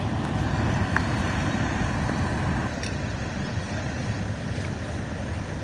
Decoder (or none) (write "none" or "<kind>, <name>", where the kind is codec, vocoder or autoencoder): none